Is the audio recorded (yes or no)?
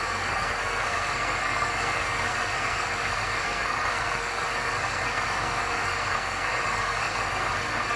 no